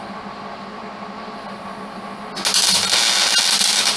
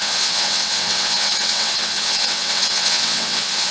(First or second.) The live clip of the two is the first